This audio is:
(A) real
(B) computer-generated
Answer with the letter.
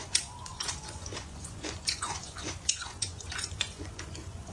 B